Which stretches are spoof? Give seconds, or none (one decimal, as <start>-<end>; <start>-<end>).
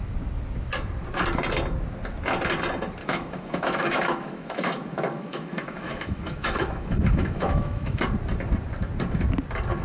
3.0-8.0